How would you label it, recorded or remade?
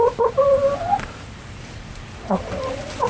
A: recorded